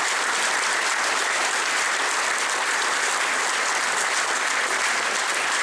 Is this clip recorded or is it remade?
recorded